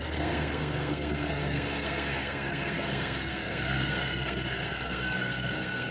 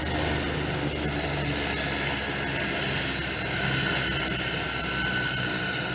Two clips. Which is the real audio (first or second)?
second